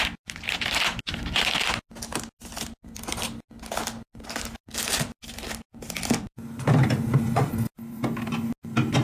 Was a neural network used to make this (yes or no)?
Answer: no